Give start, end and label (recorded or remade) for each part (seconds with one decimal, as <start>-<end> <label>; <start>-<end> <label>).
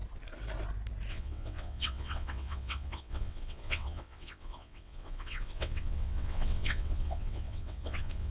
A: 0.0-1.1 recorded; 1.1-8.3 remade